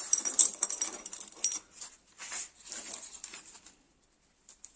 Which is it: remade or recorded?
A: remade